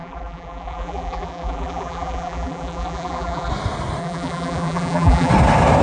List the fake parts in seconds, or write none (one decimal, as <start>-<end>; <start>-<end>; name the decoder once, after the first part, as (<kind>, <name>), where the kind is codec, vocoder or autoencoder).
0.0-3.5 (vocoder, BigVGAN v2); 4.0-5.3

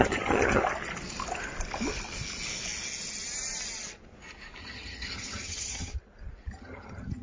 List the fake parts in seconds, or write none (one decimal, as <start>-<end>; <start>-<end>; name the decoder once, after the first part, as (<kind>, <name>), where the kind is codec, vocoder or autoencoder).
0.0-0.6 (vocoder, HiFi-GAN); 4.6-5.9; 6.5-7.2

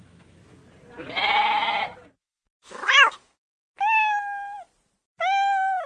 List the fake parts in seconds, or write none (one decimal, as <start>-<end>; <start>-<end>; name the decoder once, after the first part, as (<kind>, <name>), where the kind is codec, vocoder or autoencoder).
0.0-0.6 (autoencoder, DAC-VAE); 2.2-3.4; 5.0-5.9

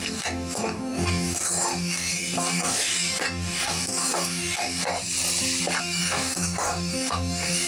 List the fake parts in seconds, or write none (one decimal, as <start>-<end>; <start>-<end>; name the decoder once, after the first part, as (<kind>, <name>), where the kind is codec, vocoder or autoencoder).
0.0-4.9 (codec, DAC); 5.8-7.7

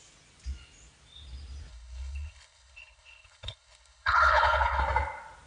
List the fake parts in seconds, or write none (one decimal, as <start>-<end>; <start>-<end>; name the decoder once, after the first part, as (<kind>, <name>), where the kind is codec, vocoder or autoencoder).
1.7-4.8 (codec, HILCodec)